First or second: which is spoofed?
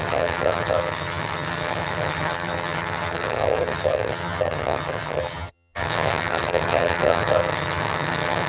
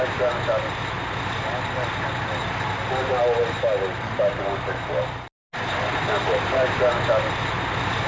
first